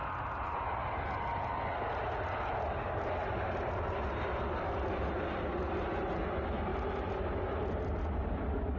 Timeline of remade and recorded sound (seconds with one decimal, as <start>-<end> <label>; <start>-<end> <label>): 0.0-8.8 recorded